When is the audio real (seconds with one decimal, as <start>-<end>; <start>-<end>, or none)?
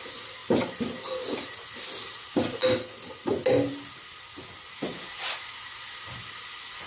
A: 0.0-0.4; 1.1-6.9